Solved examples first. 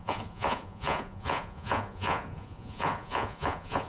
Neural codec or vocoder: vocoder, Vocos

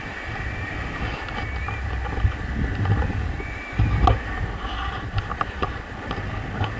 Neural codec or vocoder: none